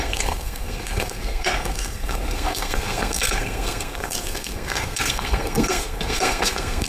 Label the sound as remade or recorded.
remade